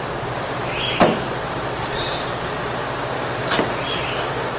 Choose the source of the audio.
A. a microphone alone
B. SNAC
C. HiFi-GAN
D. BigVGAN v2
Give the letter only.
A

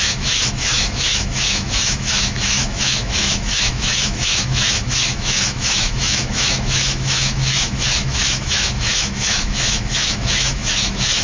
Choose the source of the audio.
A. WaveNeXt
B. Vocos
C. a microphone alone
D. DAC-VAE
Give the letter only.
D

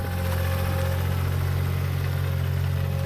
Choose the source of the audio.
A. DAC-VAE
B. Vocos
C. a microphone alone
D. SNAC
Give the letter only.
C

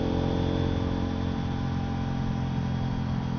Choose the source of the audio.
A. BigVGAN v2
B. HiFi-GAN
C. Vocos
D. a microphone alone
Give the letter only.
D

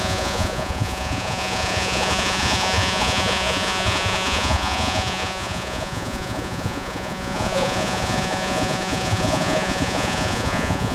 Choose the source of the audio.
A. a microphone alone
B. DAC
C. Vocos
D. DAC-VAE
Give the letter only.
C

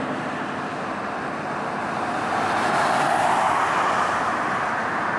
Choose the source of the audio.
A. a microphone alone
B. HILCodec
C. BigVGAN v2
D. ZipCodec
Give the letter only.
A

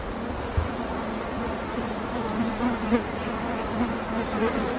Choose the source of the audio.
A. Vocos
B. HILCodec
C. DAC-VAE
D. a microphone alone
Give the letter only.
A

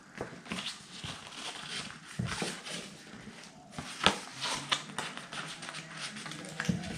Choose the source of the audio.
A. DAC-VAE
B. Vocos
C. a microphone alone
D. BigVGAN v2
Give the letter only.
C